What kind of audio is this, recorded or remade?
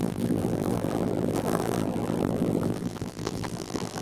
remade